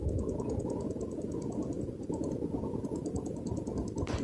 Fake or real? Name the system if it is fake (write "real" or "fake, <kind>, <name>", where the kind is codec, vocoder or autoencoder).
real